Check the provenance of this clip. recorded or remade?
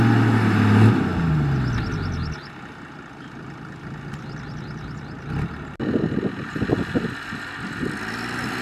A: recorded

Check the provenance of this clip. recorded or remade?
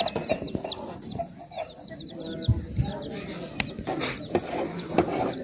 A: recorded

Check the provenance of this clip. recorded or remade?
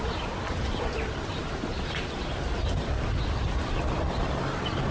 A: remade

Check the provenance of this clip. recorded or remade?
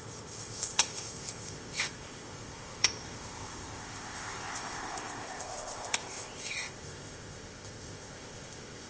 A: remade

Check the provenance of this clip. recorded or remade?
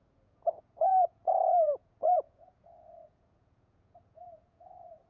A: remade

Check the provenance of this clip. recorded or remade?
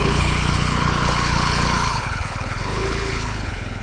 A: remade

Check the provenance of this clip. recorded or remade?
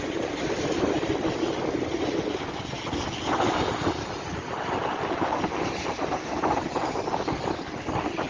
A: recorded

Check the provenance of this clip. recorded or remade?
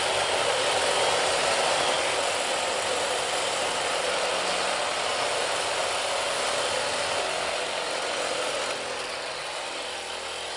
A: recorded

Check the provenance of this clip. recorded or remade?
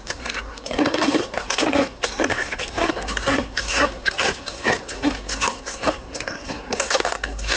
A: remade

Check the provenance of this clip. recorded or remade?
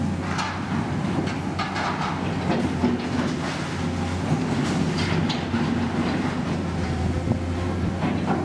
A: recorded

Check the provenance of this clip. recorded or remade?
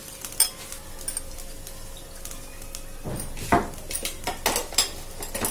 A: recorded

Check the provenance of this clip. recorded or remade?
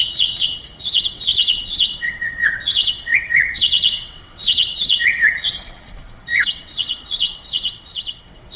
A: remade